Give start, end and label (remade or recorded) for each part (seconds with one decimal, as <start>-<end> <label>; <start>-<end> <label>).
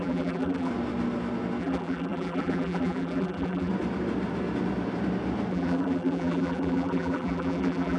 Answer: 0.0-0.7 remade; 0.7-1.6 recorded; 1.6-3.7 remade; 3.7-5.5 recorded; 5.5-8.0 remade